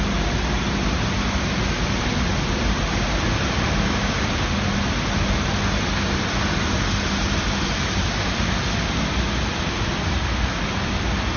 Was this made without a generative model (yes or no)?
yes